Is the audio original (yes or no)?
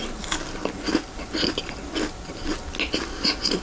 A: yes